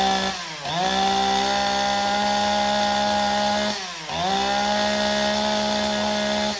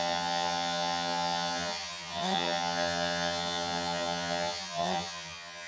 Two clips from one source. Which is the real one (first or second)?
first